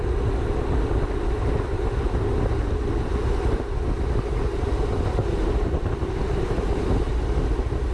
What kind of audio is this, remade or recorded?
recorded